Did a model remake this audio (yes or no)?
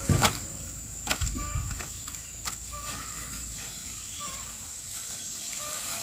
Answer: yes